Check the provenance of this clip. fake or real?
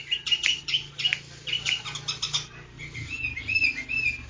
real